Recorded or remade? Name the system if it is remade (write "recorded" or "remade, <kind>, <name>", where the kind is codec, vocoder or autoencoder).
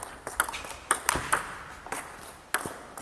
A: recorded